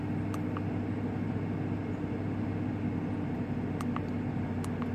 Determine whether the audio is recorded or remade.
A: recorded